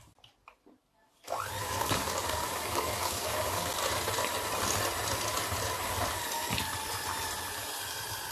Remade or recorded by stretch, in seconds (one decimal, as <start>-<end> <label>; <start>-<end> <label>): 0.0-1.6 recorded; 1.6-3.7 remade; 3.7-8.3 recorded